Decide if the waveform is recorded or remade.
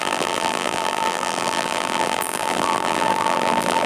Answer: remade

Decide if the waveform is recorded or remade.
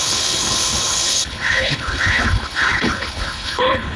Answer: remade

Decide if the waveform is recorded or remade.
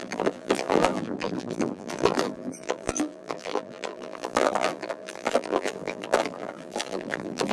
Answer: remade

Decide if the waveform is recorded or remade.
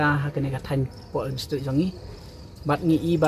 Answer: recorded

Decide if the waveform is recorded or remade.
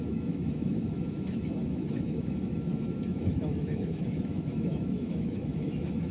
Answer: remade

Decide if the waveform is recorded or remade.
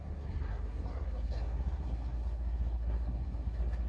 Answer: remade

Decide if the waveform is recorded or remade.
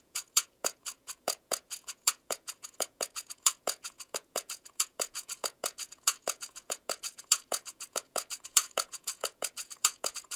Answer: remade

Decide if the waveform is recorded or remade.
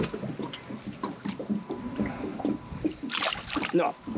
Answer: recorded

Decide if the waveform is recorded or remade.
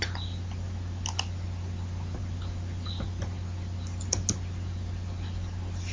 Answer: recorded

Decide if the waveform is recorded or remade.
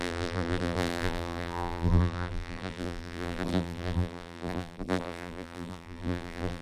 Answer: remade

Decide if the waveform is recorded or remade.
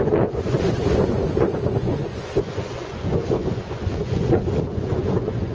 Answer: remade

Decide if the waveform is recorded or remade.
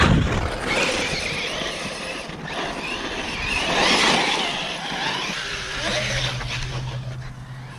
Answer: recorded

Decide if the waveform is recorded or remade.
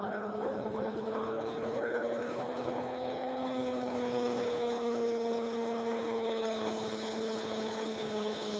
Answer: remade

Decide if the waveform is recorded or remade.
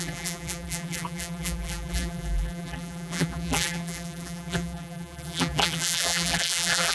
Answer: remade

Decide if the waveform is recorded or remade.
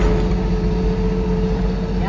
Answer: recorded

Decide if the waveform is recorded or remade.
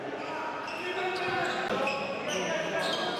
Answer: recorded